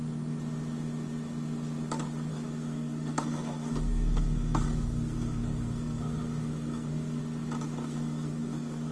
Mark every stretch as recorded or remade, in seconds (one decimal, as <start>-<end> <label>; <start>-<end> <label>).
0.0-2.3 recorded; 2.3-7.2 remade; 7.2-7.8 recorded; 7.8-8.9 remade